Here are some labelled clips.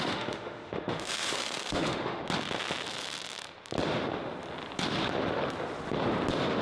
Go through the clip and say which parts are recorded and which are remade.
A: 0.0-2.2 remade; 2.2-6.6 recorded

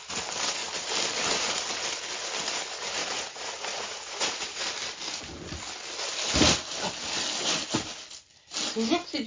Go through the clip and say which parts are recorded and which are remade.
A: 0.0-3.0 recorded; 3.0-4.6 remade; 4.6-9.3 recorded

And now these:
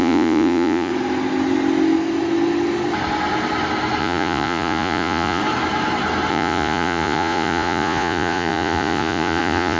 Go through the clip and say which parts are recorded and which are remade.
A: 0.0-0.9 remade; 0.9-4.0 recorded; 4.0-5.4 remade; 5.4-6.3 recorded; 6.3-9.8 remade

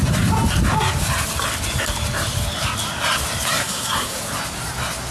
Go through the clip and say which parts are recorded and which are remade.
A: 0.0-3.6 recorded; 3.6-4.2 remade; 4.2-5.1 recorded